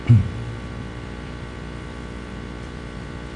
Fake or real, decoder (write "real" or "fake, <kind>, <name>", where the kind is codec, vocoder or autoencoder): fake, vocoder, BigVGAN v2